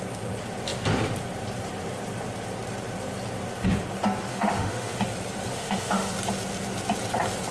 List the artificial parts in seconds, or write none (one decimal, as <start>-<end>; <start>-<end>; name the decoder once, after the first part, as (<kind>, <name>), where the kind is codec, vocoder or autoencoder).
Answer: 4.3-5.0 (autoencoder, DAC-VAE); 5.5-6.1